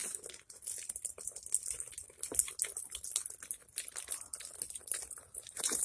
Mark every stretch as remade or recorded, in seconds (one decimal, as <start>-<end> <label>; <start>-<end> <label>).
0.0-4.8 recorded; 4.8-5.8 remade